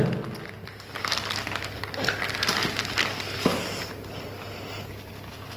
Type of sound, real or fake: real